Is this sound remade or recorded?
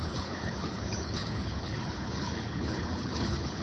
remade